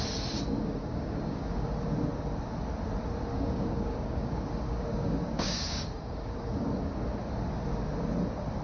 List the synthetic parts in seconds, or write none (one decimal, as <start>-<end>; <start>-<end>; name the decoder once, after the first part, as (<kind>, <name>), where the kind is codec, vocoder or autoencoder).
0.6-1.7 (codec, DAC); 3.3-6.9